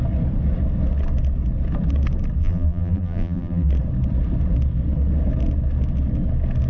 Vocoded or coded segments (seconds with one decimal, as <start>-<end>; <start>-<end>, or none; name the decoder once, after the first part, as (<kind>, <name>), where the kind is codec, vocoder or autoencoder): 2.4-3.7 (vocoder, BigVGAN v2)